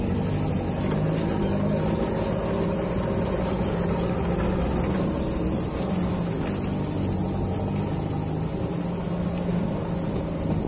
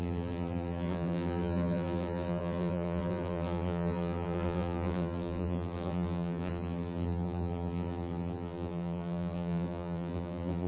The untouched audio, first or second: first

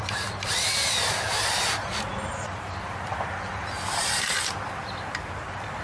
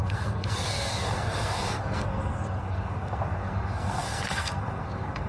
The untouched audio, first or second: first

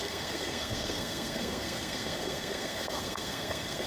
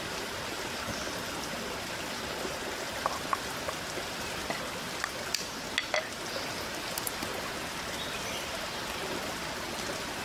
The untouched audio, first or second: second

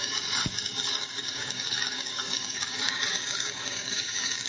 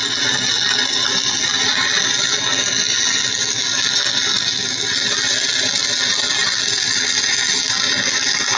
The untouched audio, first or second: second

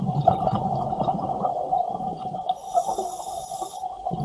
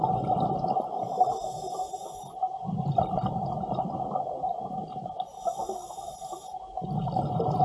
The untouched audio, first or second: second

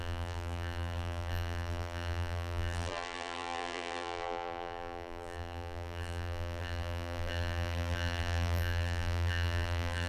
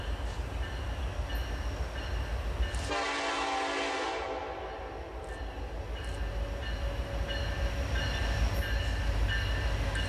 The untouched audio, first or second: second